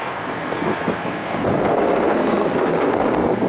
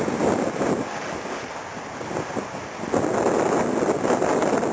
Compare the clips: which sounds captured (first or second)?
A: second